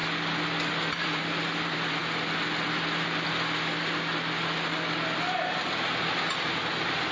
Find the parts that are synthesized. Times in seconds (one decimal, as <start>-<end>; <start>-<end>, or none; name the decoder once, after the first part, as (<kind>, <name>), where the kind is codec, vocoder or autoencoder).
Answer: 0.9-2.0 (vocoder, BigVGAN v2); 6.3-7.1